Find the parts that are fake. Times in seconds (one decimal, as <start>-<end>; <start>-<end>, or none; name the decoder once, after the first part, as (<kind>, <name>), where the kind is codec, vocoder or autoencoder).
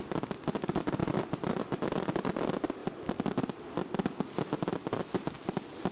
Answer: none